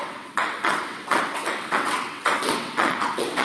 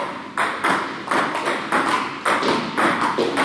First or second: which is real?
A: second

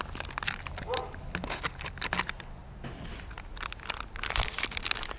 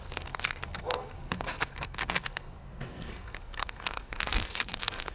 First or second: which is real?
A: first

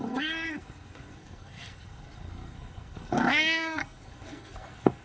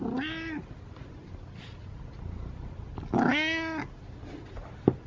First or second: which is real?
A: second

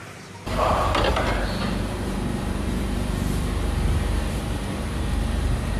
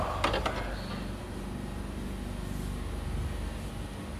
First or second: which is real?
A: second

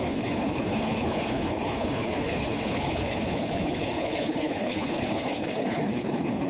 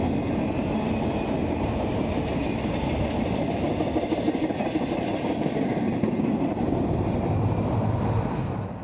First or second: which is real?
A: second